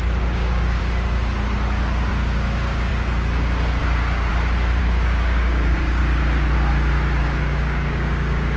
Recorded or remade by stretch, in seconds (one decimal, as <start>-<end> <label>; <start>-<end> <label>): 0.0-0.8 remade; 0.8-2.1 recorded; 2.1-2.9 remade; 2.9-3.8 recorded; 3.8-4.3 remade; 4.3-4.8 recorded; 4.8-6.0 remade; 6.0-7.2 recorded; 7.2-8.6 remade